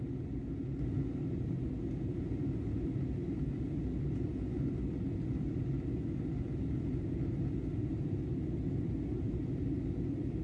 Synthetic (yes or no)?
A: no